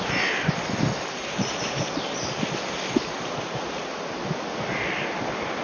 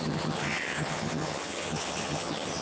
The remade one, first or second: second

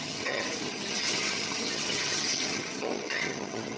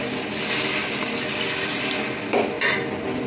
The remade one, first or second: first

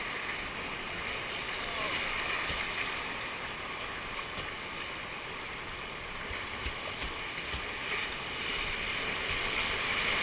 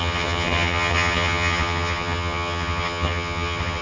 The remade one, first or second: second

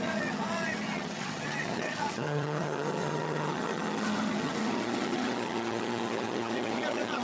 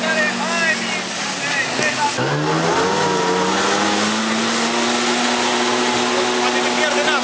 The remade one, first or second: first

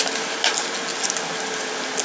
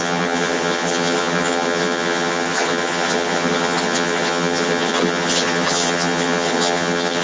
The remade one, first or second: second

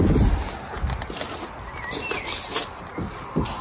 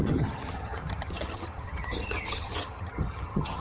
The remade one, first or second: second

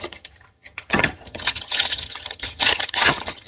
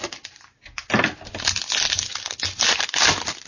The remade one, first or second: first